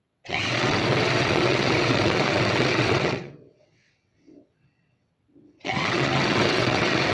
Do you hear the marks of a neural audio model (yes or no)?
yes